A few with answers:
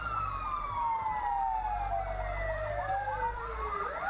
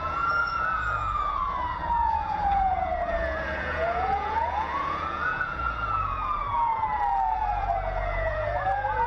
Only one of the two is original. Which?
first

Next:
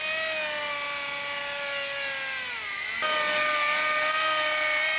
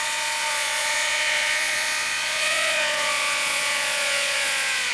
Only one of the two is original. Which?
first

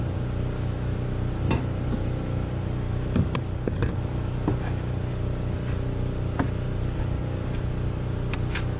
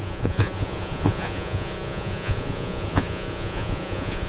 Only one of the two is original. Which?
first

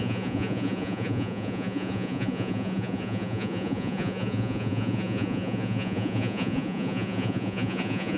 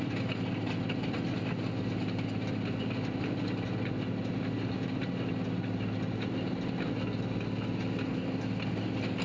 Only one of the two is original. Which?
second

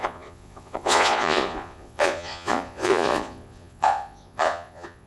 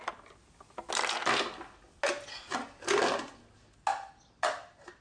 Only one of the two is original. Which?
second